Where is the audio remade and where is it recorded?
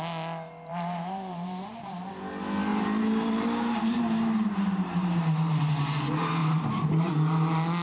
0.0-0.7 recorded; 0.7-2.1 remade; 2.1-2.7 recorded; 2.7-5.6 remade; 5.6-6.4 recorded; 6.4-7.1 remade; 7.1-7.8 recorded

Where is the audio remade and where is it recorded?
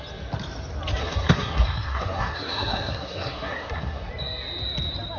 0.0-1.0 recorded; 1.0-4.1 remade; 4.1-5.2 recorded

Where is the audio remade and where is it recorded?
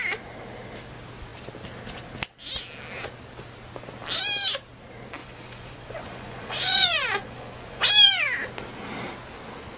0.0-5.2 recorded; 5.2-7.9 remade; 7.9-9.8 recorded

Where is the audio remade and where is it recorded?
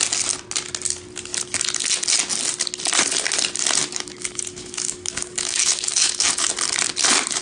0.0-3.8 recorded; 3.8-6.5 remade; 6.5-7.4 recorded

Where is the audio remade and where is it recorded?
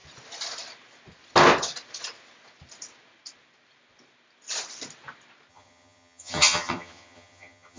0.0-5.5 recorded; 5.5-7.8 remade